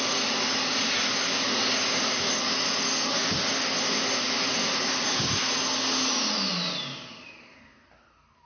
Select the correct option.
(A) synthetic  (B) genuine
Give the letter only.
B